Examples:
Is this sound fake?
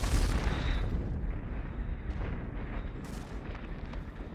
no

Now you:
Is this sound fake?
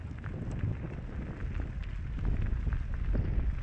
no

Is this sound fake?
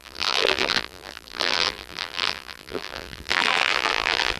yes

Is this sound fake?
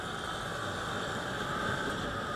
no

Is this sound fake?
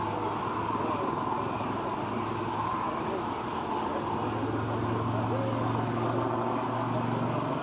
no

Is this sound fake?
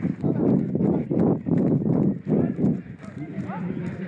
yes